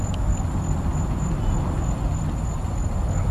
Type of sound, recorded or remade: recorded